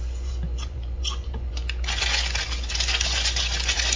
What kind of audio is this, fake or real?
fake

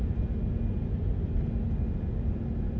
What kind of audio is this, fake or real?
real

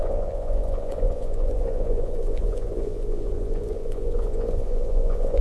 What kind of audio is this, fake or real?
fake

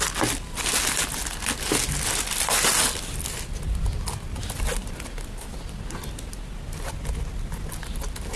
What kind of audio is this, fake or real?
real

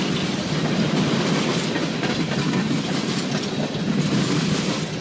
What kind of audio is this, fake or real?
real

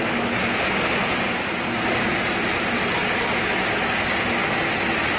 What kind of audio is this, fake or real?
real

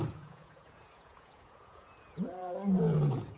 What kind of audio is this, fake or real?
fake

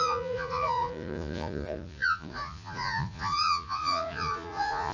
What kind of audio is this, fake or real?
fake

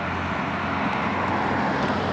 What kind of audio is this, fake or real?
real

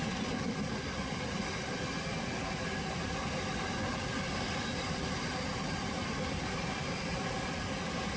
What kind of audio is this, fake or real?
real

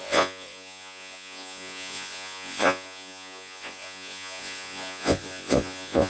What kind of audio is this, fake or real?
fake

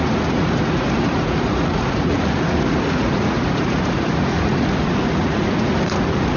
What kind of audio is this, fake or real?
fake